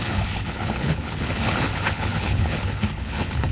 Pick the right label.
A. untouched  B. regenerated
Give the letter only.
B